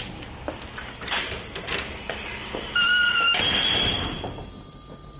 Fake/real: real